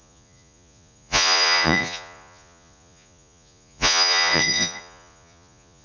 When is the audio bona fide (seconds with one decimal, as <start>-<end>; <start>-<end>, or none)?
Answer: none